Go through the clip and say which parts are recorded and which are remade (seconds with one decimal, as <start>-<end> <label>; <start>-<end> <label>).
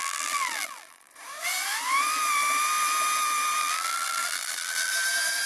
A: 0.0-1.1 remade; 1.1-3.6 recorded; 3.6-4.9 remade; 4.9-5.5 recorded